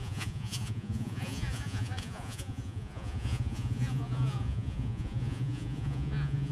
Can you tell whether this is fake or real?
fake